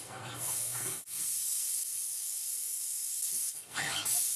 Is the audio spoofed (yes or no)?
yes